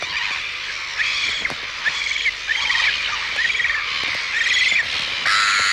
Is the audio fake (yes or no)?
no